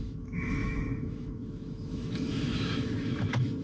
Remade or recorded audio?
remade